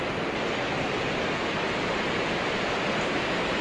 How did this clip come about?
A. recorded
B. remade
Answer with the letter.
A